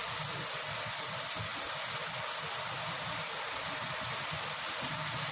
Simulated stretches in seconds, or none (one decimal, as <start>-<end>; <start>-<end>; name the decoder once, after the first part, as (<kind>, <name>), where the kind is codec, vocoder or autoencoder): 1.5-4.7 (vocoder, BigVGAN v2)